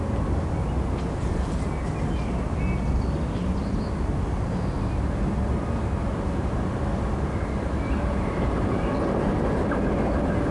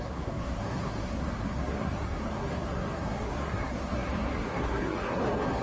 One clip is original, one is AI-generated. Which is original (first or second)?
first